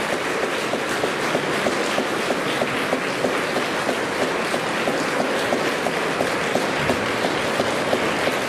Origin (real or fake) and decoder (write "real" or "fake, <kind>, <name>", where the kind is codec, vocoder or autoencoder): real